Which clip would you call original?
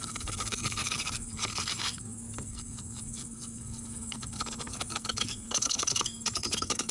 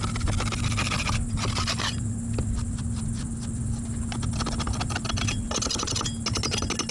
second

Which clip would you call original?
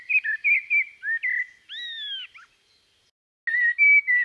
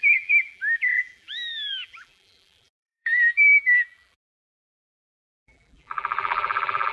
first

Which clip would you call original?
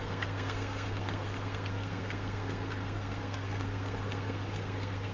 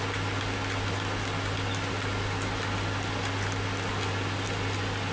second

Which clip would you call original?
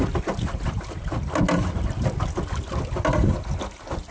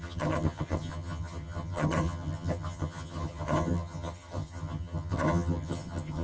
first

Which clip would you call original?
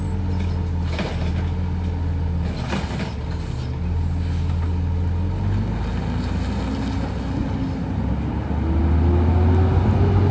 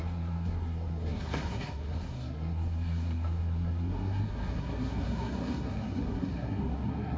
first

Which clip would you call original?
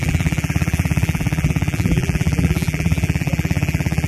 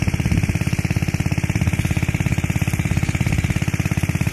second